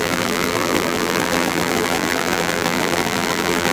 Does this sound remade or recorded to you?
remade